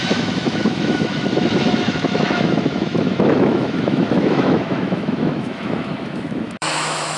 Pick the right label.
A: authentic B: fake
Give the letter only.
B